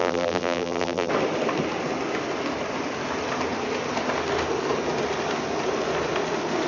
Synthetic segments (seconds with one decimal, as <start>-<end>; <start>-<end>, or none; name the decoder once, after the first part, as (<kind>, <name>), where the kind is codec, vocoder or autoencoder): 0.0-1.1 (vocoder, BigVGAN v2)